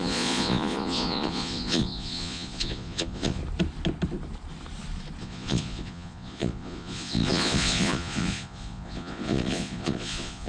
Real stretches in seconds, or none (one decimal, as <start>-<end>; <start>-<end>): 3.4-5.2